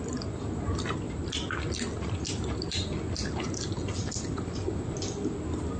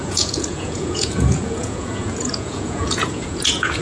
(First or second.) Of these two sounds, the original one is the first